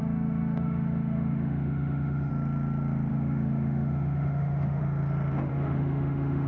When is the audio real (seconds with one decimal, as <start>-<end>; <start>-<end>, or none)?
2.3-3.1; 4.8-5.5